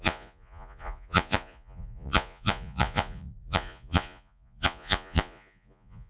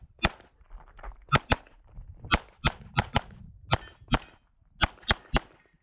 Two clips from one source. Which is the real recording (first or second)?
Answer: second